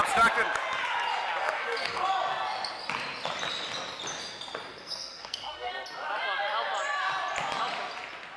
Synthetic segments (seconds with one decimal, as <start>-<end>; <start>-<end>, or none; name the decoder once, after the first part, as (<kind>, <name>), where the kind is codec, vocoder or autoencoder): 1.4-2.1 (codec, SNAC); 4.7-5.7